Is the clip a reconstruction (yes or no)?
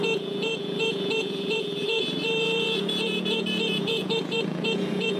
yes